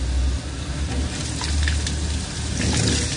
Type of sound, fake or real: real